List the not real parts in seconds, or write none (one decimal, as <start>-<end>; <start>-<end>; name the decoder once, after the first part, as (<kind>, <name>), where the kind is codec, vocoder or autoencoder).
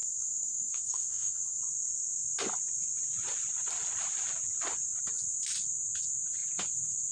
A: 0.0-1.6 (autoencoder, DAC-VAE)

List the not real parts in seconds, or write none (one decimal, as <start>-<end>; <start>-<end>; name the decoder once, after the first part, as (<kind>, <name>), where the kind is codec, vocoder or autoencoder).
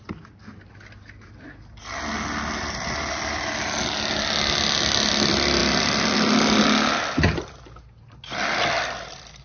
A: none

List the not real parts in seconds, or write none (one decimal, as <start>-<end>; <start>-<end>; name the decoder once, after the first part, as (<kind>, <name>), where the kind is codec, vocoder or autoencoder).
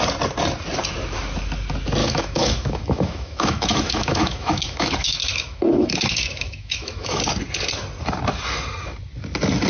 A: 2.0-7.2 (autoencoder, DAC-VAE)